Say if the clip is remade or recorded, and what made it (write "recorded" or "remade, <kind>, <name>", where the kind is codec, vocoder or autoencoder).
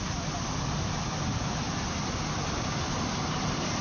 recorded